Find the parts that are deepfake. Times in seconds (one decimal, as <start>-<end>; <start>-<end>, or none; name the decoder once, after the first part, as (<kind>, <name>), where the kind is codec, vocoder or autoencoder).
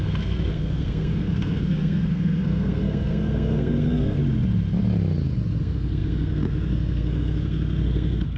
0.0-4.2 (codec, SNAC); 5.6-8.4